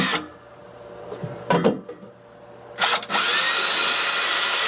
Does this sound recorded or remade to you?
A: recorded